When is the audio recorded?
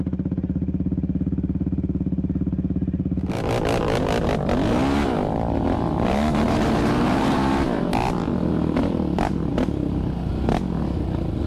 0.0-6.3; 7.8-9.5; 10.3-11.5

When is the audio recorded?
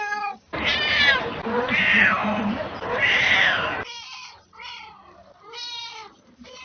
0.0-0.7; 1.4-2.2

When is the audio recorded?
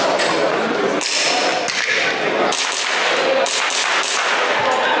0.0-0.4; 1.0-5.0